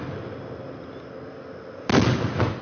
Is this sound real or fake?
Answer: real